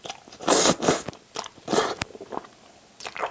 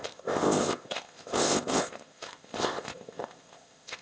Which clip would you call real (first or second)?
first